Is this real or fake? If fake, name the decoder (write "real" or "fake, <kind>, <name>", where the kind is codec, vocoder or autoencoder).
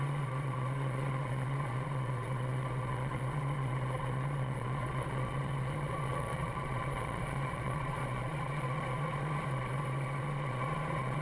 fake, vocoder, Vocos